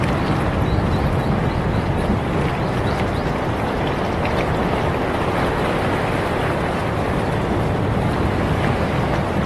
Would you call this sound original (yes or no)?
yes